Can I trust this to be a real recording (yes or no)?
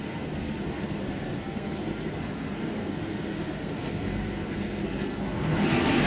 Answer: no